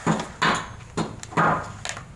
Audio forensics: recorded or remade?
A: recorded